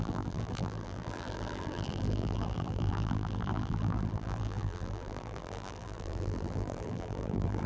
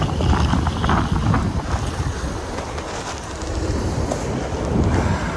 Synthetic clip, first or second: first